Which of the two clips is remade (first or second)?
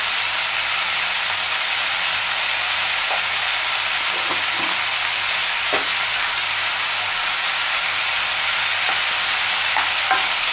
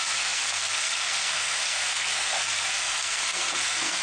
second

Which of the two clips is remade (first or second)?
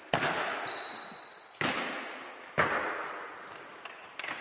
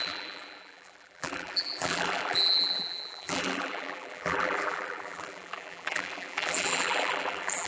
second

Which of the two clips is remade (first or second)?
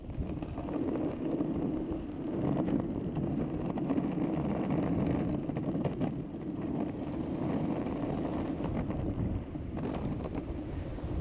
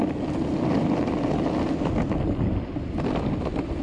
first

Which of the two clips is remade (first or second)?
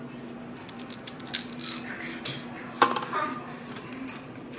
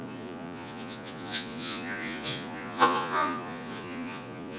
second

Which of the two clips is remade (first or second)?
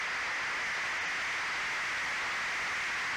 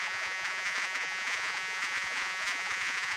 second